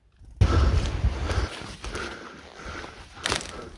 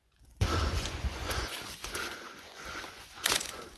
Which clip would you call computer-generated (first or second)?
second